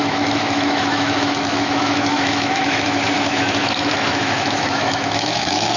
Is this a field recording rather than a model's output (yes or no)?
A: no